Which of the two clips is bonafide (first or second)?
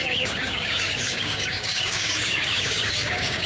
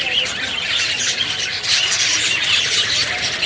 second